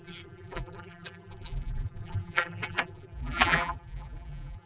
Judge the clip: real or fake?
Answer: fake